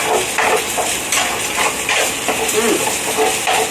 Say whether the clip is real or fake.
real